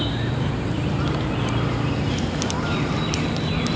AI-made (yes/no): no